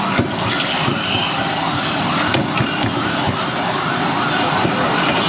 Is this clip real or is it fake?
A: real